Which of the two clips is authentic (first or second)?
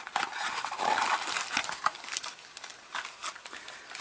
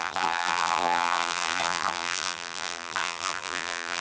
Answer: first